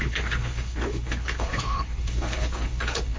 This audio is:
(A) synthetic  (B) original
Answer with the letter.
A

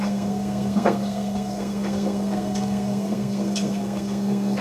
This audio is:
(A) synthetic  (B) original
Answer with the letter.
A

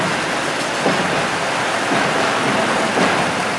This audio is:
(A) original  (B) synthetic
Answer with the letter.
B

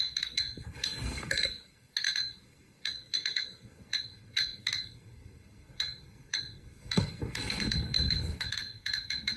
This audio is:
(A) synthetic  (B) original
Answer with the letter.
A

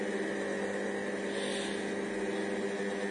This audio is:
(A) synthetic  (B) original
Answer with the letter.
B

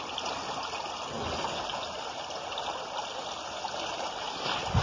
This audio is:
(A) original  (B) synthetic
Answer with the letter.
A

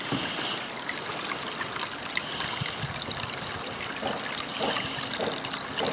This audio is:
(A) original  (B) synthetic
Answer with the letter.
A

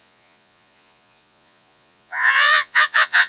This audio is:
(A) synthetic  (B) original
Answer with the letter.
A